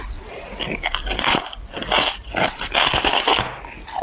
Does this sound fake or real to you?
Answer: real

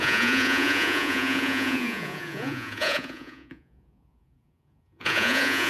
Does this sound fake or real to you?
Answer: fake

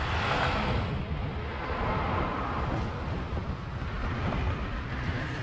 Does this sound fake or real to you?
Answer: real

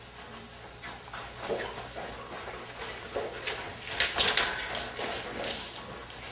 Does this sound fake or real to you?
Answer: real